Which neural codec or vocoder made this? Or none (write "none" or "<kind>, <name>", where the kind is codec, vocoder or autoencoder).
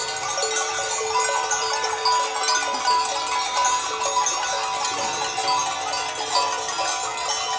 none